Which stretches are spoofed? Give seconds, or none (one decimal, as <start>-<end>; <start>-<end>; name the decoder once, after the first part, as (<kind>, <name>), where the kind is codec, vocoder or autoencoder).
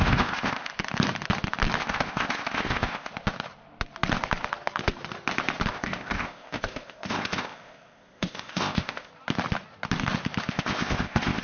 0.0-0.7 (codec, ZipCodec); 1.8-3.1; 5.7-9.1; 10.5-11.4